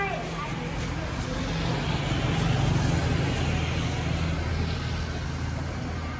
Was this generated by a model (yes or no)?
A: no